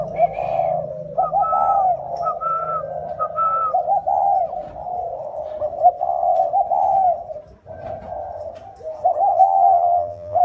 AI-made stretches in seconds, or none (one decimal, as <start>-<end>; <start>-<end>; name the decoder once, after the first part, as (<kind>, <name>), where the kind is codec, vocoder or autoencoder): 9.3-10.4 (vocoder, BigVGAN v2)